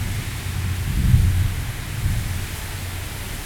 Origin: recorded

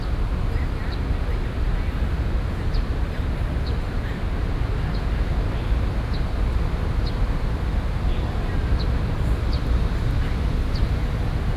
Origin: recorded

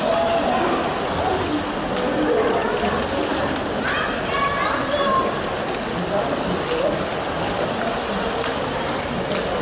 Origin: recorded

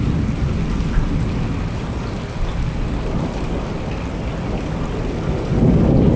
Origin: recorded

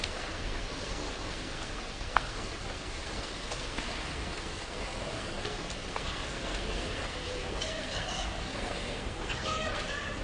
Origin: remade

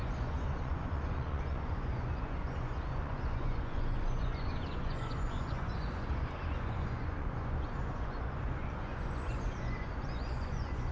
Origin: remade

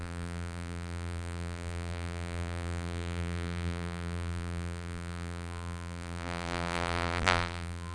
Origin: remade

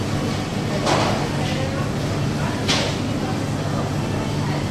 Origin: recorded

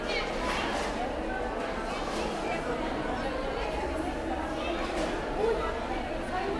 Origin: recorded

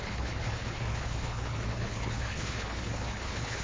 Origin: remade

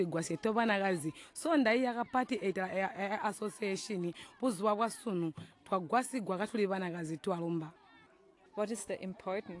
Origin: recorded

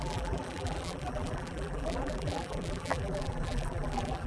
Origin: remade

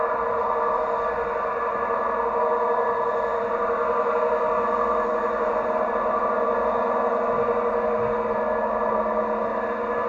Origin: recorded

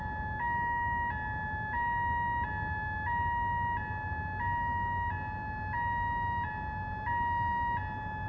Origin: recorded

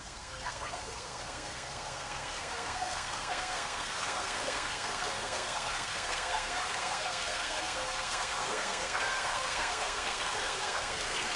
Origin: remade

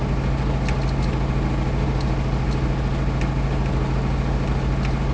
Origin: recorded